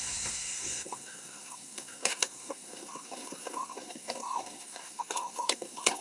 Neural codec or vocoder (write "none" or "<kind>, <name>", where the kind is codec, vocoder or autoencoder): codec, SNAC